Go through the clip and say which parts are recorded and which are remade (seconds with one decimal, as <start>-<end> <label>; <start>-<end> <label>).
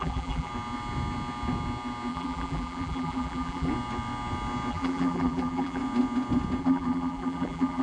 0.0-0.5 remade; 0.5-2.1 recorded; 2.1-3.7 remade; 3.7-4.7 recorded; 4.7-5.8 remade; 5.8-6.6 recorded; 6.6-7.8 remade